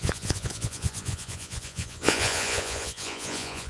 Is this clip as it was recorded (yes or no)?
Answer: no